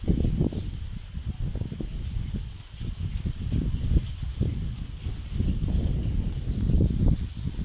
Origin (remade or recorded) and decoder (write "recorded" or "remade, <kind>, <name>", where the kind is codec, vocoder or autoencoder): recorded